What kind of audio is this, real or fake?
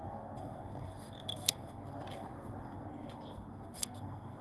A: fake